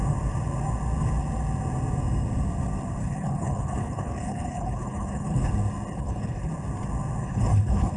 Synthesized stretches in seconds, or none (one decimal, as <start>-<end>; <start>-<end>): 3.0-5.5; 5.9-6.5; 7.2-8.0